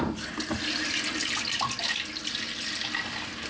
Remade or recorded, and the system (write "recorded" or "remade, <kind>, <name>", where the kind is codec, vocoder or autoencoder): recorded